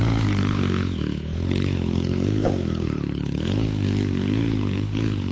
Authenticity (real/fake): fake